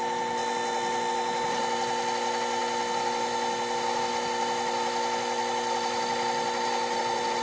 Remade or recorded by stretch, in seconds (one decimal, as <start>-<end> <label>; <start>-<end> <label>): 0.0-7.4 recorded